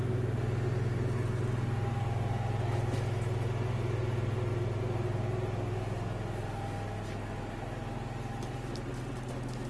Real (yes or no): yes